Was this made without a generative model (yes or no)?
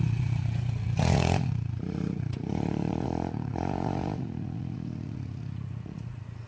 no